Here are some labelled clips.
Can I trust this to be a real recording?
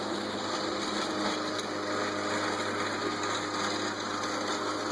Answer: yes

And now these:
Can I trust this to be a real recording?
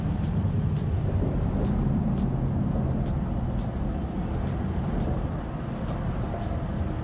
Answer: yes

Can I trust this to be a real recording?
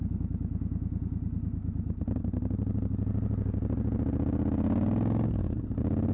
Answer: yes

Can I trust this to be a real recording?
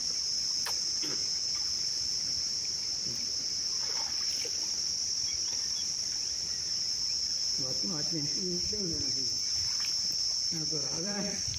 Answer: no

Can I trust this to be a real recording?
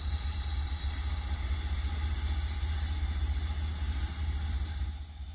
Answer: yes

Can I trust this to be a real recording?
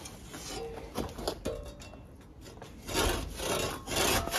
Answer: yes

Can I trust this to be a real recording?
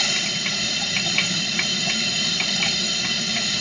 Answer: no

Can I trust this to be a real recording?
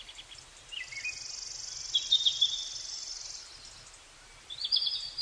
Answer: yes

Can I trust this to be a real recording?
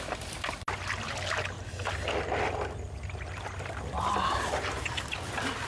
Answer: yes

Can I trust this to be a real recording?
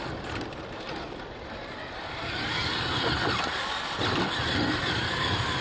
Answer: no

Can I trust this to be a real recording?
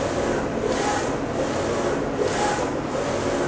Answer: yes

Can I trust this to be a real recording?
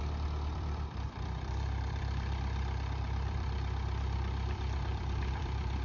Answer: no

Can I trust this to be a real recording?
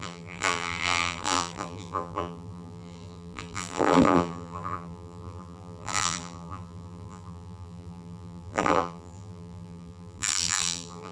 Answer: no